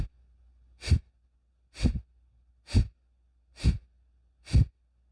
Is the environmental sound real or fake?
real